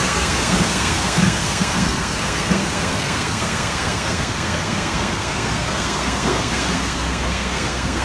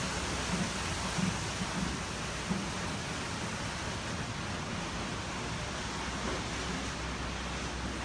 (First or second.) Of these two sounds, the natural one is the second